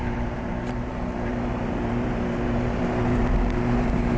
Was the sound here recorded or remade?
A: remade